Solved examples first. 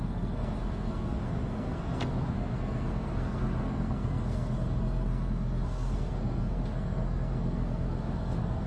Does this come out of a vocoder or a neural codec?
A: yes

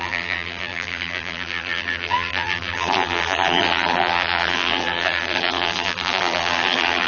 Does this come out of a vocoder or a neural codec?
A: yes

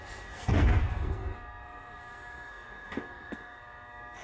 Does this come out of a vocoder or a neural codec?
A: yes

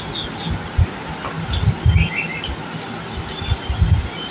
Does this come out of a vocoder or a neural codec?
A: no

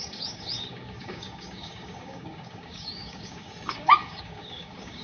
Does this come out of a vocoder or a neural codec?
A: yes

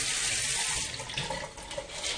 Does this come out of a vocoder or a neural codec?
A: no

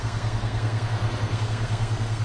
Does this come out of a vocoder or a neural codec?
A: yes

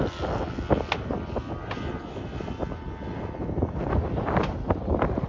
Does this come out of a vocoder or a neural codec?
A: no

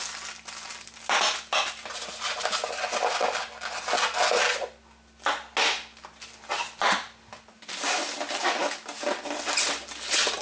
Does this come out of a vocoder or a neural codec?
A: no